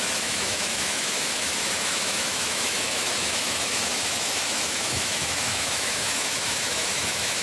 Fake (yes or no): yes